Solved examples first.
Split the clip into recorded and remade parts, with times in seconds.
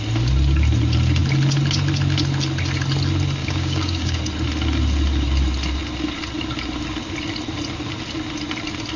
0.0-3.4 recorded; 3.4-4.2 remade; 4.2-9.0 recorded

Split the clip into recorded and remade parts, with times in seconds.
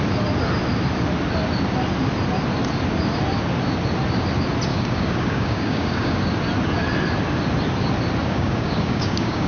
0.0-4.7 recorded; 4.7-6.2 remade; 6.2-8.2 recorded; 8.2-9.5 remade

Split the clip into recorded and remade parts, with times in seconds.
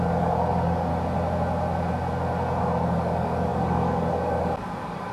0.0-0.9 remade; 0.9-2.6 recorded; 2.6-5.1 remade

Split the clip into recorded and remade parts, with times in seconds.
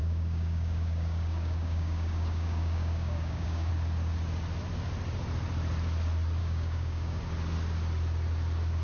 0.0-3.7 remade; 3.7-6.4 recorded; 6.4-7.2 remade; 7.2-8.8 recorded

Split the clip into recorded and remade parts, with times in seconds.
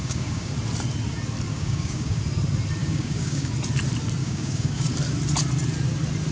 0.0-0.5 remade; 0.5-1.5 recorded; 1.5-2.2 remade; 2.2-2.8 recorded; 2.8-3.5 remade; 3.5-4.2 recorded; 4.2-4.9 remade; 4.9-6.3 recorded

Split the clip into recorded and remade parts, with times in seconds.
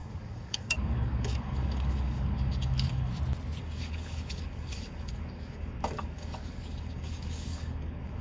0.0-3.1 remade; 3.1-3.6 recorded; 3.6-8.2 remade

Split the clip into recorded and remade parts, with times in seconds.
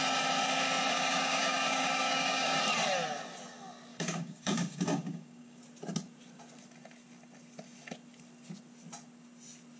0.0-0.9 recorded; 0.9-2.6 remade; 2.6-3.9 recorded; 3.9-5.6 remade; 5.6-9.8 recorded